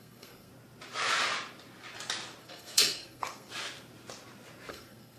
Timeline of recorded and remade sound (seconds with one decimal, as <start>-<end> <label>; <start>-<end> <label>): 0.0-0.5 remade; 0.5-2.4 recorded; 2.4-3.5 remade; 3.5-4.7 recorded; 4.7-5.2 remade